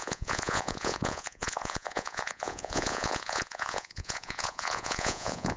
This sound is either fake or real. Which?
fake